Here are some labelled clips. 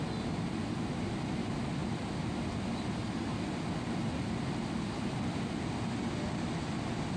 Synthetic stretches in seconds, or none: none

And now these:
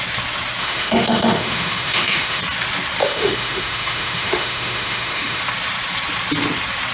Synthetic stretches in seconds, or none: 0.6-2.4; 3.0-5.4

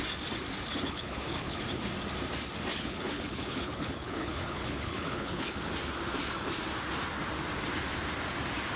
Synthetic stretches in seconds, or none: 0.7-1.6; 2.7-5.7

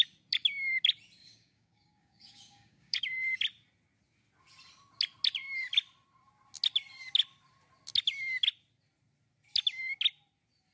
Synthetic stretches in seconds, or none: 1.2-3.0